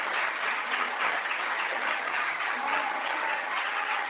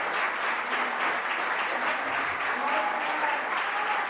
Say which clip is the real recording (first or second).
second